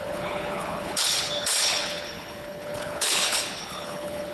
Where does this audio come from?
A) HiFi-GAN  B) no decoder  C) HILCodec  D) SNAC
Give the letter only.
C